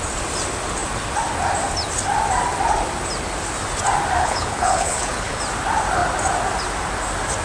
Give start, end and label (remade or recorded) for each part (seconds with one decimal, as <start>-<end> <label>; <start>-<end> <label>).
0.0-4.2 recorded; 4.2-5.4 remade; 5.4-7.4 recorded